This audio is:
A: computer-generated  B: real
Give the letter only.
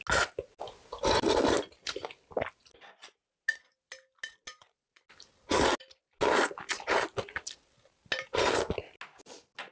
B